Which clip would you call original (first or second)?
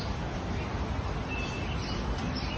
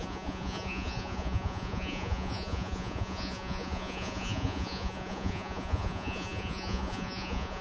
first